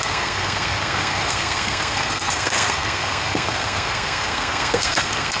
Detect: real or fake fake